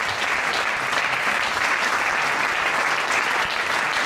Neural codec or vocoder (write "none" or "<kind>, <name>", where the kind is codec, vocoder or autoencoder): none